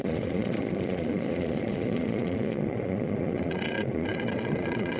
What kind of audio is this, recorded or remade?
remade